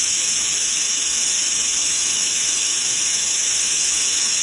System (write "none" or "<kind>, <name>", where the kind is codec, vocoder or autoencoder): autoencoder, DAC-VAE